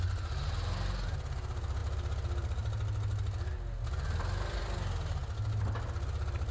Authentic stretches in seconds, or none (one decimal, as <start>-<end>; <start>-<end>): 0.0-6.5